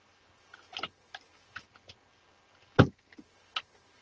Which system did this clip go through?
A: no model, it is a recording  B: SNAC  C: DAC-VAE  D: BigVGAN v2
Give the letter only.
A